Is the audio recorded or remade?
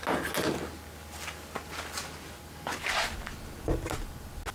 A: recorded